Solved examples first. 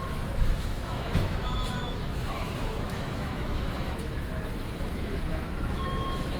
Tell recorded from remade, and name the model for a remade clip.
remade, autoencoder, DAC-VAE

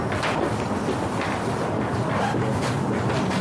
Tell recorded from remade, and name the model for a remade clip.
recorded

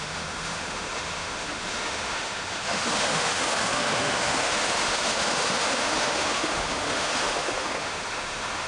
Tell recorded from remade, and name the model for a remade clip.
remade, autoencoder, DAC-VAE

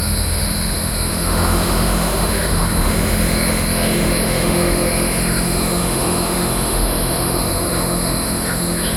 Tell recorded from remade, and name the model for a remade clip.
remade, autoencoder, DAC-VAE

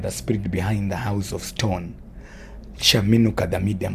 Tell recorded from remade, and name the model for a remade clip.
recorded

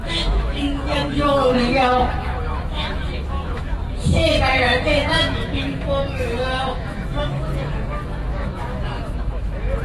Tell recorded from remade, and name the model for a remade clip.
remade, autoencoder, DAC-VAE